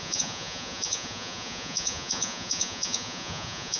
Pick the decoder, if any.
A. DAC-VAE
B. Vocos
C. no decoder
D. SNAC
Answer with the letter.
B